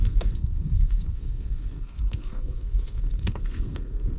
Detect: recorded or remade remade